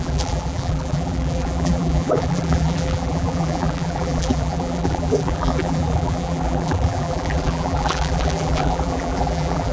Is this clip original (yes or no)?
no